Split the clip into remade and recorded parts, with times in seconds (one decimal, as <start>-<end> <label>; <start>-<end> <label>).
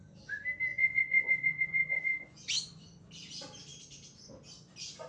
0.0-0.7 recorded; 0.7-3.1 remade; 3.1-5.1 recorded